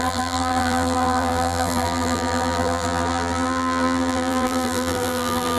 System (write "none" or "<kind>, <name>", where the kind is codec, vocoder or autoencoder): vocoder, BigVGAN v2